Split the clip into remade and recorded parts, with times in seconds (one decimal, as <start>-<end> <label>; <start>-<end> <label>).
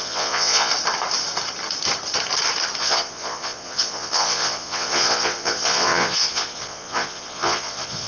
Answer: 0.0-0.7 remade; 0.7-2.8 recorded; 2.8-8.1 remade